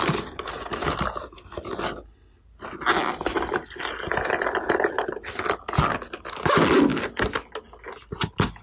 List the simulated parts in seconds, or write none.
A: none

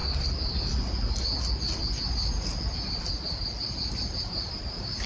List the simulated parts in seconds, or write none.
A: 3.1-5.1 (vocoder, BigVGAN v2)

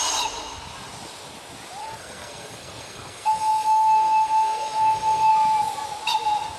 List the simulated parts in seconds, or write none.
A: 1.8-5.3 (codec, SNAC)

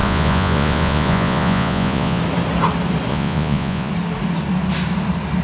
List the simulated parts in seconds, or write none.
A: 0.0-2.2 (vocoder, Vocos); 3.1-3.9